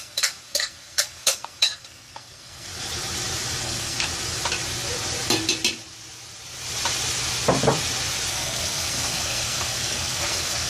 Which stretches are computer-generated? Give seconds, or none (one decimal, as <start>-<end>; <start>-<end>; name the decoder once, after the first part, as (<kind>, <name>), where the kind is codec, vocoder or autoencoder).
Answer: 0.0-2.7 (codec, SNAC); 3.6-4.1; 8.3-10.7